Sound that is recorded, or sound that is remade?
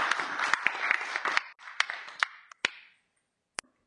recorded